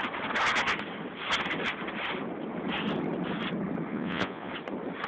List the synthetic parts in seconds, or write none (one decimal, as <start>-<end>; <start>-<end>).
3.9-4.5